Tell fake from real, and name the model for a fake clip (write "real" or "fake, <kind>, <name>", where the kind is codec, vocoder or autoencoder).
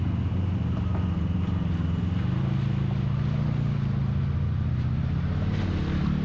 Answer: real